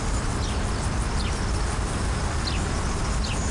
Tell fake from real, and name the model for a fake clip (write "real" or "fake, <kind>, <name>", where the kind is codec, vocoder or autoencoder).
real